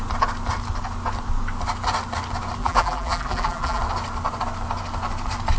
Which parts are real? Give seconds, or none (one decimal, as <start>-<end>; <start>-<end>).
0.0-2.6; 3.8-5.6